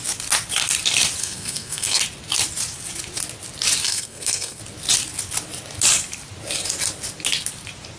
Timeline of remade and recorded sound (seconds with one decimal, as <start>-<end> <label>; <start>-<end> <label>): 0.0-1.2 recorded; 1.2-2.0 remade; 2.0-3.8 recorded; 3.8-4.6 remade; 4.6-8.0 recorded